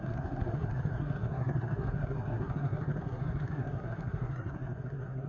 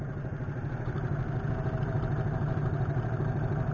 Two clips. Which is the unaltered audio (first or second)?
second